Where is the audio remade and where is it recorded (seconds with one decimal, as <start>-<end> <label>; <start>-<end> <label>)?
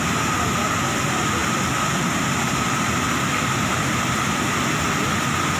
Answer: 0.0-5.6 recorded